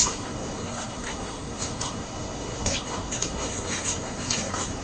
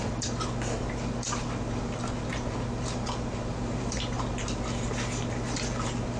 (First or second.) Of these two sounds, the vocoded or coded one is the first